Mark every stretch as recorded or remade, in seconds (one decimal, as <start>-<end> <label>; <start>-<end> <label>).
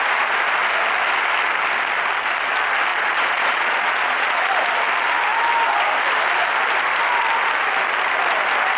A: 0.0-2.9 recorded; 2.9-4.5 remade; 4.5-8.8 recorded